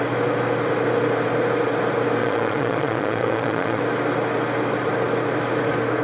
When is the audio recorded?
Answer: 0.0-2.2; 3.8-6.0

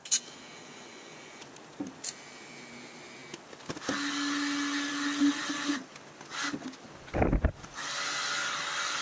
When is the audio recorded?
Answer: 0.0-0.6; 1.4-9.0

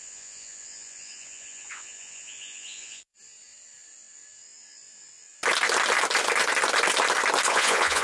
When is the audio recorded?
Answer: 3.1-7.5

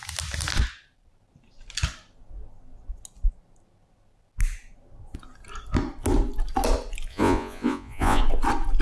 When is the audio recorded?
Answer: 0.0-7.1; 8.2-8.8

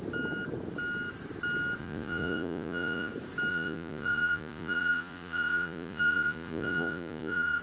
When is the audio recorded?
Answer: 0.0-1.8; 3.1-3.5

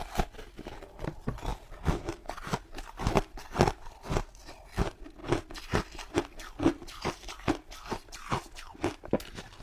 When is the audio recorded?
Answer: 0.0-9.6